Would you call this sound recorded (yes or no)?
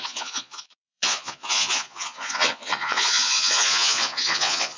no